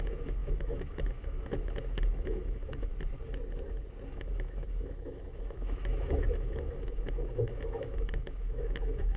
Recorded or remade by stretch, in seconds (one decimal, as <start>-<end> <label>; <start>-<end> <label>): 0.0-2.9 remade; 2.9-4.1 recorded; 4.1-9.2 remade